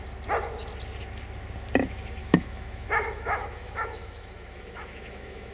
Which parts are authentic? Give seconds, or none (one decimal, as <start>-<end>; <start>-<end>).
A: 0.0-2.2